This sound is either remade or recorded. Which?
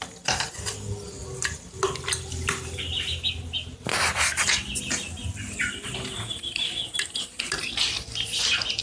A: recorded